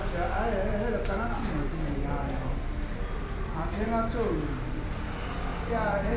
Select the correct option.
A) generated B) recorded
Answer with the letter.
B